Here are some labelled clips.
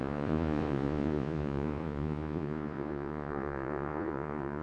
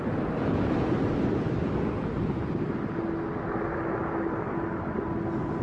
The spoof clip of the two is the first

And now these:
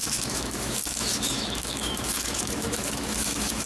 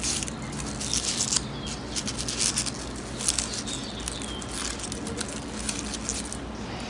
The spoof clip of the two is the first